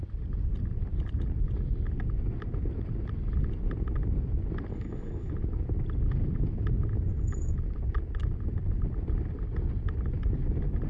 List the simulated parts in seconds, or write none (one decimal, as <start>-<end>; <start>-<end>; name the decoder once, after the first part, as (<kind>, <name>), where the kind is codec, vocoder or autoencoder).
4.7-5.3 (codec, HILCodec)